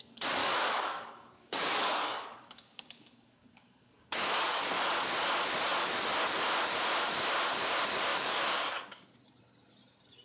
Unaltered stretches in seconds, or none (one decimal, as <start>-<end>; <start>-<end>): 0.0-0.4; 4.8-8.1; 8.8-10.2